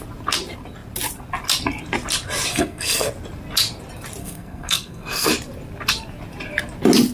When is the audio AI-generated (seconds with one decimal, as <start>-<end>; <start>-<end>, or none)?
2.5-3.1; 4.2-5.3